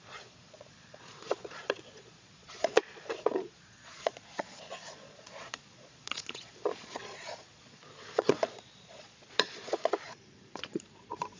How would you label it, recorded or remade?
remade